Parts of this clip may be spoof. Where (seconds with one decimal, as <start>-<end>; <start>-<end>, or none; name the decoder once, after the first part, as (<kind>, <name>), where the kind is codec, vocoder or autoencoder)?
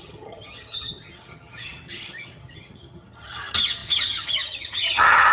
0.0-5.3 (vocoder, HiFi-GAN)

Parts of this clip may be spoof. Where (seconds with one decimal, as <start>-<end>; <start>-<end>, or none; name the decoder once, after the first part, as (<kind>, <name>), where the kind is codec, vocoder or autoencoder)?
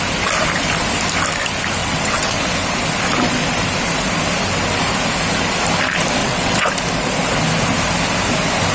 1.8-2.4 (vocoder, WaveNeXt); 6.2-6.7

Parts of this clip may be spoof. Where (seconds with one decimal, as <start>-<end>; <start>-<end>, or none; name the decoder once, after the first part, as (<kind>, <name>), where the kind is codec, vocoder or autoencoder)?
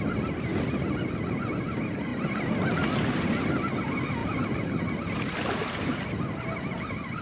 none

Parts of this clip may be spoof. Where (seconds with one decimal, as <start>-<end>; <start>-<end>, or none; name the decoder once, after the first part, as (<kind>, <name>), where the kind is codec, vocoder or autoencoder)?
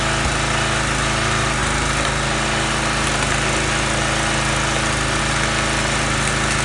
none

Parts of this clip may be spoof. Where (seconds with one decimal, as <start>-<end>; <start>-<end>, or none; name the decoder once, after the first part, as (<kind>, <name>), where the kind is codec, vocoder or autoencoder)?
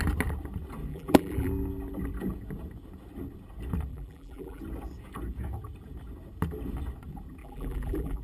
0.9-1.5 (vocoder, BigVGAN v2); 3.9-4.6; 7.4-8.2